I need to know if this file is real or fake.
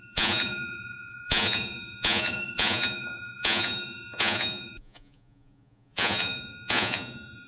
fake